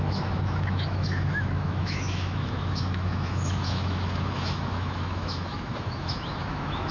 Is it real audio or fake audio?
fake